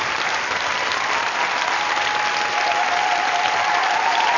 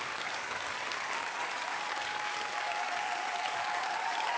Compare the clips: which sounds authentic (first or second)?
first